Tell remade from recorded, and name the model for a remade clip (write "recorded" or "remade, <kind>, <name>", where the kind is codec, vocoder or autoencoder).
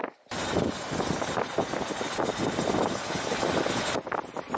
recorded